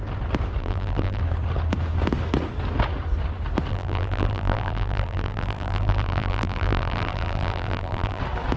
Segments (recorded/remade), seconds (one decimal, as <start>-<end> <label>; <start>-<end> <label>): 0.0-0.6 recorded; 0.6-1.2 remade; 1.2-3.7 recorded; 3.7-8.2 remade; 8.2-8.6 recorded